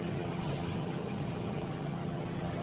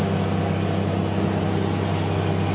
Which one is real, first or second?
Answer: second